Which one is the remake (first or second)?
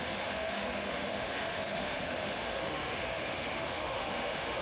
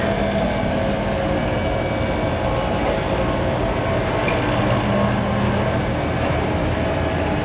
first